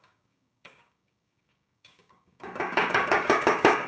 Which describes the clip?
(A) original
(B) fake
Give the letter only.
B